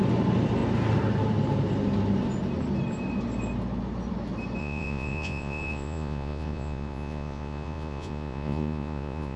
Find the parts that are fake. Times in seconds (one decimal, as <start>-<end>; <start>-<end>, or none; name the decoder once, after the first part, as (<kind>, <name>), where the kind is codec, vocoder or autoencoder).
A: 4.6-9.4 (vocoder, Vocos)